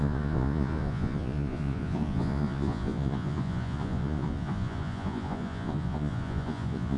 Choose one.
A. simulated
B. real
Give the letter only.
A